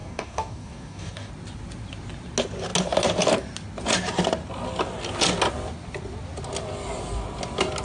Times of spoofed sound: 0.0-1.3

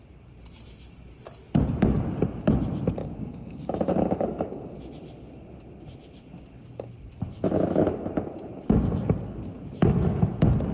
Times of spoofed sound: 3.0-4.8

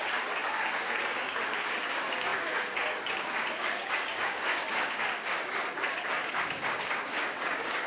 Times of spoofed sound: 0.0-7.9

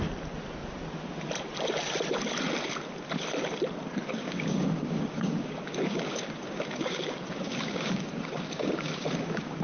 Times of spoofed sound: 4.2-9.6

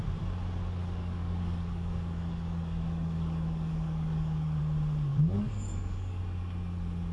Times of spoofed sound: 0.8-4.6; 5.1-6.2